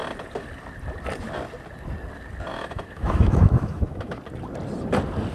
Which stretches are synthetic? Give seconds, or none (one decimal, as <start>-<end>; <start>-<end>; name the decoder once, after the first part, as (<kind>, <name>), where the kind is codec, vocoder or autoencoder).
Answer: 2.5-4.2 (autoencoder, DAC-VAE)